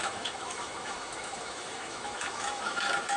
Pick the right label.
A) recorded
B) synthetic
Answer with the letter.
B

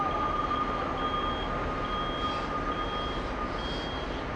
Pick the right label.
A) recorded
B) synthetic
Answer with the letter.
A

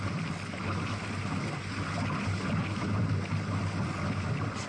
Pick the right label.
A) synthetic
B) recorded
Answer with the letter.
B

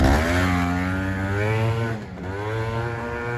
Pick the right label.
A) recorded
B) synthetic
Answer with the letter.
A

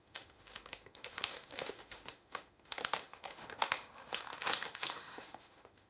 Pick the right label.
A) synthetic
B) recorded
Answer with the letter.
A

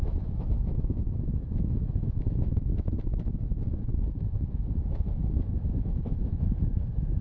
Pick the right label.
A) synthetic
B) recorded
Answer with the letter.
A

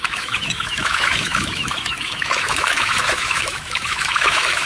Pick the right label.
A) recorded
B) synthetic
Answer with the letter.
B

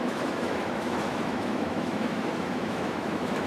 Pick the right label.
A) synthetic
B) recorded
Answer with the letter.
A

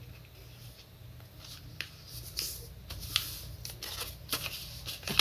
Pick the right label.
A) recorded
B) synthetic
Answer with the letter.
A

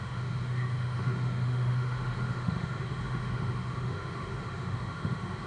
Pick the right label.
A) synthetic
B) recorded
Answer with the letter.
A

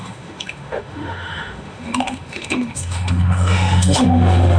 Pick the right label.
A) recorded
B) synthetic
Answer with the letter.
B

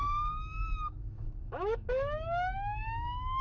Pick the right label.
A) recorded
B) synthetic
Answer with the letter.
B